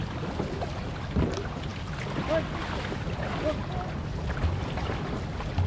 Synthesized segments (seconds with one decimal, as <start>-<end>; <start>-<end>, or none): none